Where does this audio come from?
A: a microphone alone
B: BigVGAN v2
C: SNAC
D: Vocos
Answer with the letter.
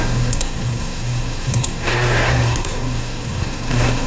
C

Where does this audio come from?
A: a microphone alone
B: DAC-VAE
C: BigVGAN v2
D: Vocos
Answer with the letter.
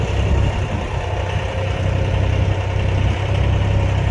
A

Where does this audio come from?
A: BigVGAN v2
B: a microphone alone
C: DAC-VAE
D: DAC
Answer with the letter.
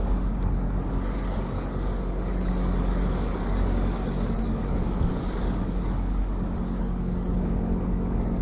D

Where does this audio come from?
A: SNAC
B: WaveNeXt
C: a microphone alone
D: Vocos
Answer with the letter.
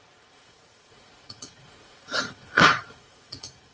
D